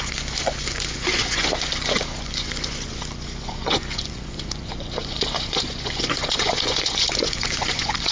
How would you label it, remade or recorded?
remade